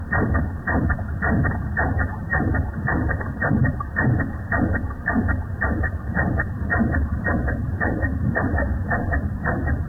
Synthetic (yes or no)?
yes